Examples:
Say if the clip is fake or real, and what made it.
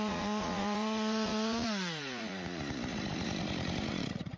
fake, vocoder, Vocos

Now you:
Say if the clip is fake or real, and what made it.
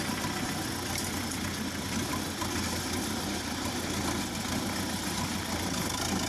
real